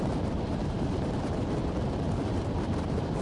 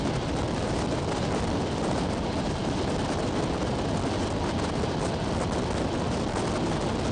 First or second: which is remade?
first